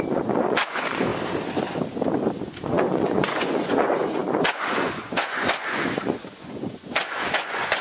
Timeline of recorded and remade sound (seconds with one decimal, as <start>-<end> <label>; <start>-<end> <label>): 0.0-1.1 remade; 1.1-2.4 recorded; 2.4-7.8 remade